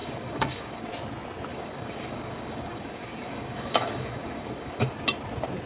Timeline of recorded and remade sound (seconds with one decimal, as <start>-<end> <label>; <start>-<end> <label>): 0.0-0.9 remade; 0.9-1.5 recorded; 1.5-4.9 remade; 4.9-5.7 recorded